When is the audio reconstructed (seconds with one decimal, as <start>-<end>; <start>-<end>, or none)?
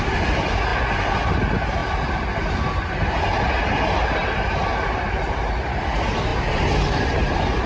none